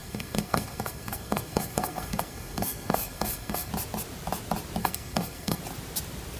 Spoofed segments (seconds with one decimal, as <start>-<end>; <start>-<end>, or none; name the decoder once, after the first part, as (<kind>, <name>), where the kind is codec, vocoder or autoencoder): 0.0-3.7 (codec, SNAC); 4.8-5.6